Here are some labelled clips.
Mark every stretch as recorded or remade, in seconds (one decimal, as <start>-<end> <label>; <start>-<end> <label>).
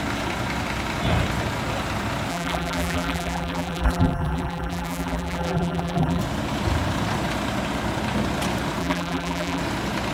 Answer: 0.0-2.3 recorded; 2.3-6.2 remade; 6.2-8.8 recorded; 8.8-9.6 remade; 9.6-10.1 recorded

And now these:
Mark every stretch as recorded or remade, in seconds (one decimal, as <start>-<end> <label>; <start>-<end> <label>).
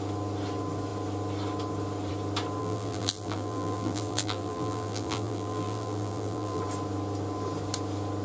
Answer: 0.0-2.6 recorded; 2.6-6.6 remade; 6.6-8.2 recorded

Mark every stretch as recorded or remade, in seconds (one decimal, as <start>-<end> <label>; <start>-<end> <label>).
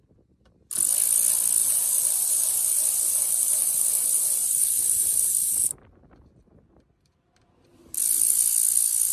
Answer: 0.0-1.6 recorded; 1.6-5.8 remade; 5.8-9.1 recorded